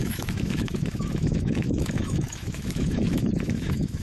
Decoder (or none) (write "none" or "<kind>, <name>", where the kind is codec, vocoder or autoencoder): autoencoder, DAC-VAE